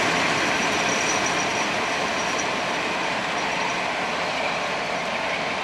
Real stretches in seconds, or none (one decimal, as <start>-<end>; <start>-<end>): 0.0-5.6